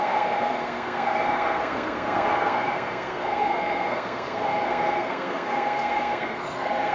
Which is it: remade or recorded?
remade